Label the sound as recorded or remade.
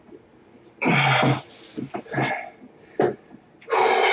recorded